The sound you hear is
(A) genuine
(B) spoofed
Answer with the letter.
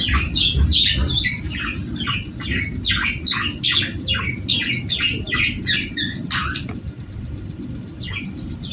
A